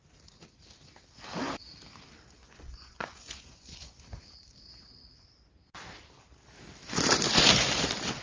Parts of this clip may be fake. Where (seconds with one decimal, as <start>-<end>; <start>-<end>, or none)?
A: 2.4-4.0